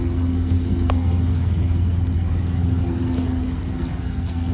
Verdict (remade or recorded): remade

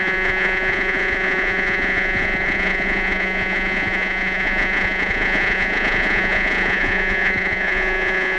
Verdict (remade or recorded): remade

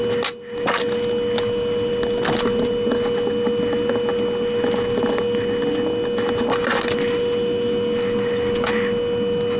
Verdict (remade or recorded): recorded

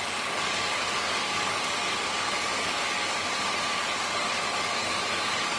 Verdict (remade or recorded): remade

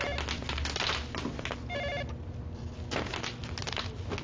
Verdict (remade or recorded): recorded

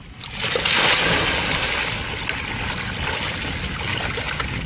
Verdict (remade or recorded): recorded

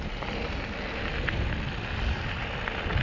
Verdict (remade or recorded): recorded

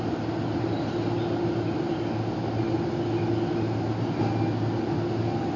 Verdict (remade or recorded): recorded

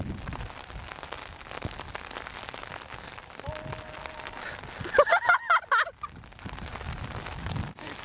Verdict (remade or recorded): recorded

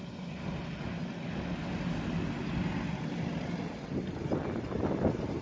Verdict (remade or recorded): recorded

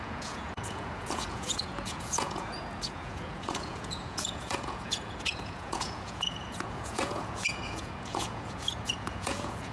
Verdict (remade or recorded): remade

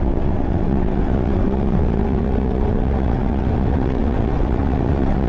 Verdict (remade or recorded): remade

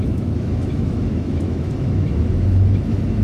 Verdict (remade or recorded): remade